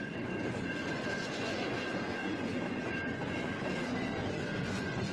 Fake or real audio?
fake